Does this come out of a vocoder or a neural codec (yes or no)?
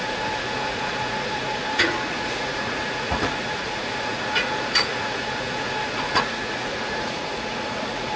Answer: yes